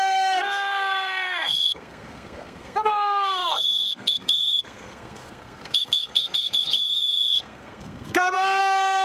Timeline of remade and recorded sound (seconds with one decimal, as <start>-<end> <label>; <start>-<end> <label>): 0.0-9.0 remade